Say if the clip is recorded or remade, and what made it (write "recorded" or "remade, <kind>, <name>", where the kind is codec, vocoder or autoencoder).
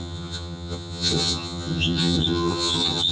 remade, vocoder, HiFi-GAN